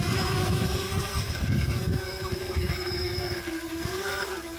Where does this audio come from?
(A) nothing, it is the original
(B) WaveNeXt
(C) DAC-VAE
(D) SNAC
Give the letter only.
D